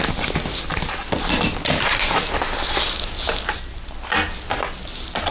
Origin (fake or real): real